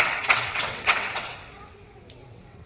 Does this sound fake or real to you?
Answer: fake